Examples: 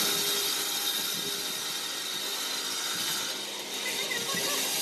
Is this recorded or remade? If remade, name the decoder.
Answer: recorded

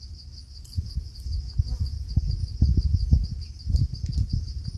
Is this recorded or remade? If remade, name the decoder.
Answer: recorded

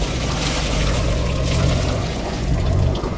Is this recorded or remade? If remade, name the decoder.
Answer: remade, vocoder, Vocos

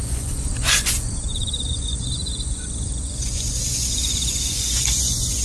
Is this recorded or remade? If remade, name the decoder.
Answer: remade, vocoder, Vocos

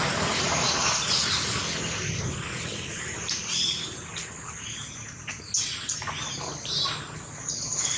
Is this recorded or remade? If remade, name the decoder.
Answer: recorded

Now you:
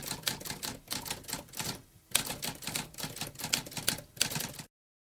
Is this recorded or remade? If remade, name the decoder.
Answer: recorded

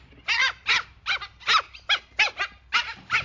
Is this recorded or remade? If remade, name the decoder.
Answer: recorded